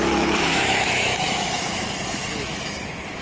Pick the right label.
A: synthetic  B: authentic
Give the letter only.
A